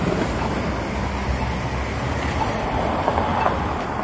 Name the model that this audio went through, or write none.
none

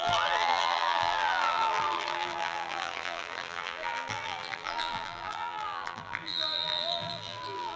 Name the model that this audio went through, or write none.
vocoder, BigVGAN v2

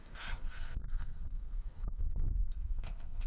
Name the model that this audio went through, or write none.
codec, SNAC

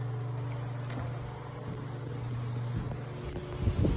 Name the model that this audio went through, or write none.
none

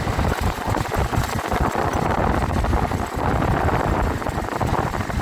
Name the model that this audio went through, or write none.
none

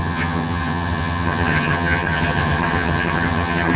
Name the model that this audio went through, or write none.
vocoder, HiFi-GAN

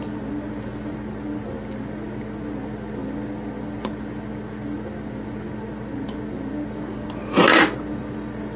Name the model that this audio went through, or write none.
none